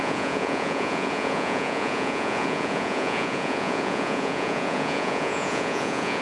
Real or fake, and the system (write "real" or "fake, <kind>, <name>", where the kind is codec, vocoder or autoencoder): fake, vocoder, Vocos